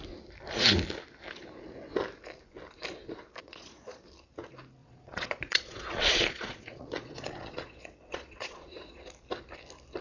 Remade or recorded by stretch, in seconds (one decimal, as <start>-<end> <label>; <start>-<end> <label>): 0.0-3.4 recorded; 3.4-4.0 remade; 4.0-4.8 recorded; 4.8-9.0 remade; 9.0-10.0 recorded